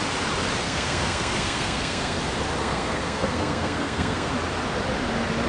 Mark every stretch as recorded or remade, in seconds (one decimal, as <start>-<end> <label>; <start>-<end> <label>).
0.0-0.6 recorded; 0.6-2.2 remade; 2.2-2.6 recorded; 2.6-4.3 remade; 4.3-5.5 recorded